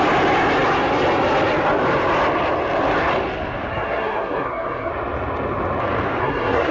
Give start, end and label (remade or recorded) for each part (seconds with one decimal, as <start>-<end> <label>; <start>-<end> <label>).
0.0-3.7 recorded; 3.7-4.9 remade; 4.9-6.2 recorded; 6.2-6.7 remade